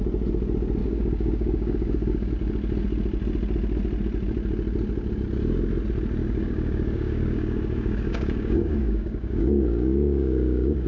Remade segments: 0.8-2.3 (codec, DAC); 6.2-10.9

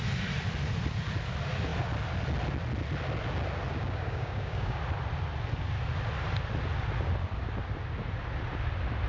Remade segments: 3.7-4.8 (codec, DAC)

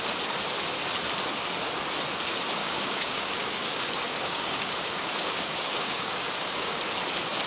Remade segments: 2.6-6.8 (codec, DAC)

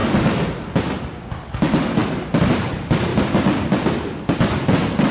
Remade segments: none

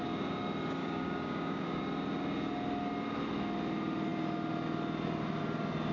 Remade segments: 0.8-1.8 (codec, DAC)

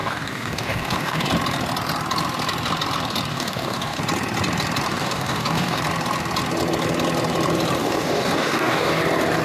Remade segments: 0.0-1.3 (codec, DAC); 3.3-4.0; 4.9-5.8; 7.8-9.0